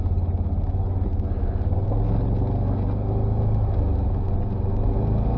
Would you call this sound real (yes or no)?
yes